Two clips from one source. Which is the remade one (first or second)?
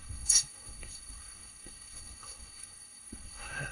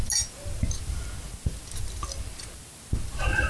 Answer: first